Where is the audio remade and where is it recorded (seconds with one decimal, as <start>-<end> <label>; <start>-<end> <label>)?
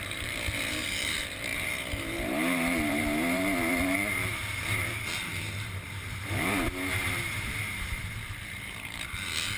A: 0.0-9.6 remade